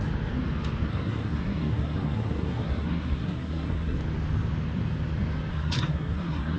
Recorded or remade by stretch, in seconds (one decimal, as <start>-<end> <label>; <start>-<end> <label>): 0.0-0.9 recorded; 0.9-4.0 remade; 4.0-5.5 recorded; 5.5-6.6 remade